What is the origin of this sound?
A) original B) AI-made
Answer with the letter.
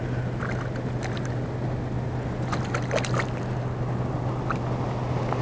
A